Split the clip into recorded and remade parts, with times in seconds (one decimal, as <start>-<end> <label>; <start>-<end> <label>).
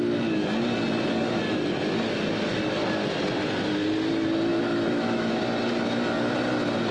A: 0.0-4.5 recorded; 4.5-5.4 remade; 5.4-6.9 recorded